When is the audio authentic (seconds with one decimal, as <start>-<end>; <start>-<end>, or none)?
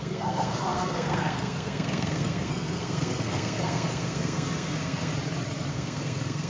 5.1-5.7